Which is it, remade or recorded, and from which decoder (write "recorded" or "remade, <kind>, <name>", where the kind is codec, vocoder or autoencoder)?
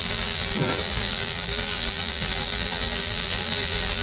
remade, vocoder, BigVGAN v2